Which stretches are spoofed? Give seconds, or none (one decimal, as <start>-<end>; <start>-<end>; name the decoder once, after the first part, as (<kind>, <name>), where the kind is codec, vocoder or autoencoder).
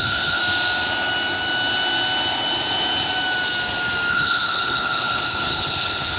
0.0-0.4 (codec, HILCodec); 4.1-6.2